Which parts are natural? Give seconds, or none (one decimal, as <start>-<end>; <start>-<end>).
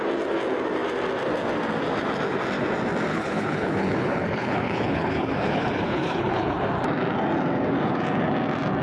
0.0-3.1; 6.6-8.8